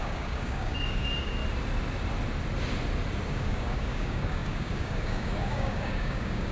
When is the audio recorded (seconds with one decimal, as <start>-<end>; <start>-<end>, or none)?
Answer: 1.4-3.3